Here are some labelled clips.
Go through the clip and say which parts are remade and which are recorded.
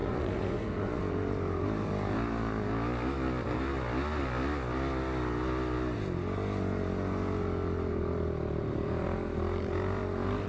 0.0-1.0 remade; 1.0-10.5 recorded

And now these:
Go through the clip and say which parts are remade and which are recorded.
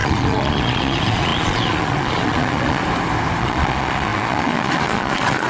0.0-2.8 remade; 2.8-3.4 recorded; 3.4-5.5 remade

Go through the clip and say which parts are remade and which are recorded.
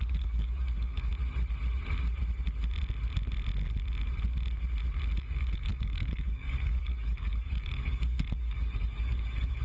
0.0-1.1 remade; 1.1-5.2 recorded; 5.2-9.6 remade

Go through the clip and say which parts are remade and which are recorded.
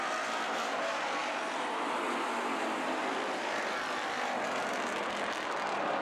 0.0-6.0 recorded